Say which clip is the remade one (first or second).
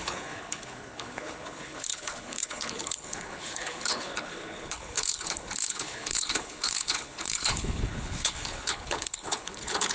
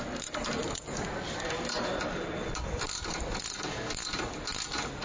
first